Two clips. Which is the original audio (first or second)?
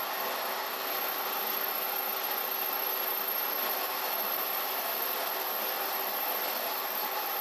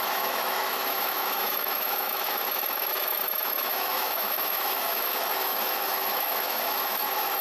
first